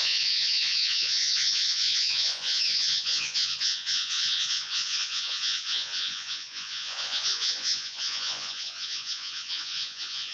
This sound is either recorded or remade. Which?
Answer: remade